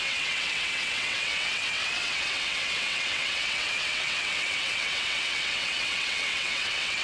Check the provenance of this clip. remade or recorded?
remade